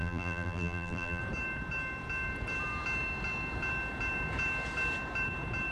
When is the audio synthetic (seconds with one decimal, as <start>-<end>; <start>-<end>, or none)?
0.0-1.2